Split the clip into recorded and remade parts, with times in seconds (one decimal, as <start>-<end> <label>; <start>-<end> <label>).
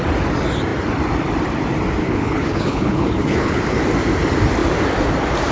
0.0-2.0 recorded; 2.0-3.6 remade; 3.6-5.5 recorded